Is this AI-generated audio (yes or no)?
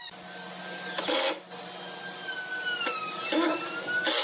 no